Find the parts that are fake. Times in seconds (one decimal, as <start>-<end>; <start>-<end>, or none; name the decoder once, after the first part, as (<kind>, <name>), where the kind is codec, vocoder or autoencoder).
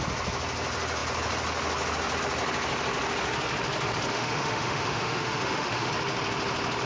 4.1-5.9 (autoencoder, DAC-VAE)